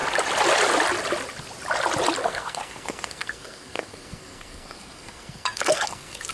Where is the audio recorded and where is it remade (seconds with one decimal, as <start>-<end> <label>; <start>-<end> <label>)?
0.0-2.2 recorded; 2.2-6.3 remade